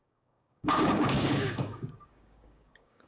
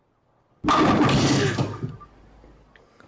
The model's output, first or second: first